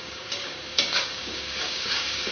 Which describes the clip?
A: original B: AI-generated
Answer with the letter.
B